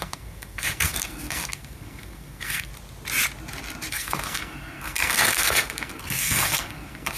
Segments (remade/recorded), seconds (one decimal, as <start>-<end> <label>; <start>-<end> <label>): 0.0-2.7 remade; 2.7-3.9 recorded; 3.9-7.2 remade